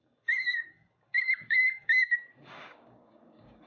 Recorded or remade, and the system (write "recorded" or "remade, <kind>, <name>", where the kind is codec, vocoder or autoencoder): remade, codec, DAC